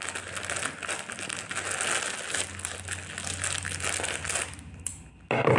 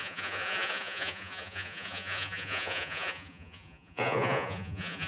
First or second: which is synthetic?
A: second